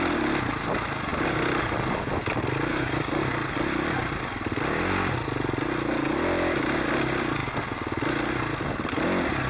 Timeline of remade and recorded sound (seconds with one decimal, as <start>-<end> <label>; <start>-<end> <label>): 0.0-2.7 recorded; 2.7-3.3 remade; 3.3-9.5 recorded